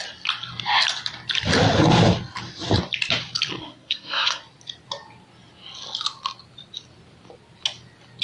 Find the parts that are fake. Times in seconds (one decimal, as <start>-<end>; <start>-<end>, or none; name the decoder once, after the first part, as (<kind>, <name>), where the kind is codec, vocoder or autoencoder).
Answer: 3.6-4.4 (codec, SNAC)